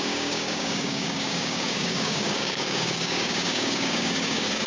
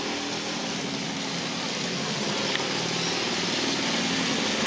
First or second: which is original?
second